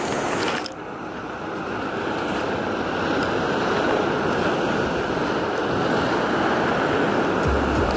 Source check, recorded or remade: recorded